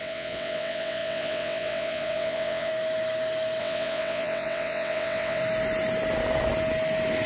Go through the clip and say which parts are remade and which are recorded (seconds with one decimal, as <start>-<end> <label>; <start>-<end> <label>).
0.0-2.7 remade; 2.7-3.6 recorded; 3.6-5.4 remade; 5.4-7.3 recorded